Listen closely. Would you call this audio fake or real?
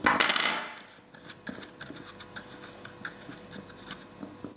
real